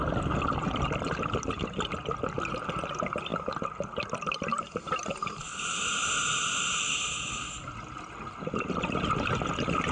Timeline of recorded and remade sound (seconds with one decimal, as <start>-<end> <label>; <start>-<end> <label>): 0.0-9.9 recorded